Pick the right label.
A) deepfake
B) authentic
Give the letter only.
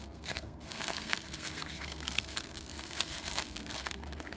A